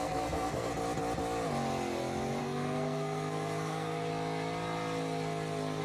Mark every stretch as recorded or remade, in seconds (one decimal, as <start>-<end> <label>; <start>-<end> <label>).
0.0-0.7 remade; 0.7-2.4 recorded; 2.4-4.1 remade; 4.1-5.8 recorded